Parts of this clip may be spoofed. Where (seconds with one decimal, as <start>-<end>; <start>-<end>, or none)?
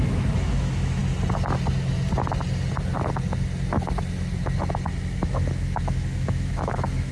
0.0-1.0; 5.3-7.1